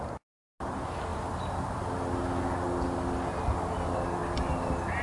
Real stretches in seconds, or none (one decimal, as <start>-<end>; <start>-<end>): 0.0-5.0